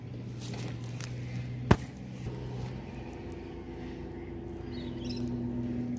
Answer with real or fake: real